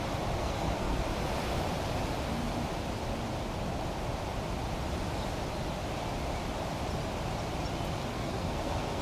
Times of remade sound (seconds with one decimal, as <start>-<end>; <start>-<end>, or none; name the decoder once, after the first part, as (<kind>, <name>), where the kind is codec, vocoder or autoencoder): 0.4-1.0 (codec, SNAC); 8.1-9.0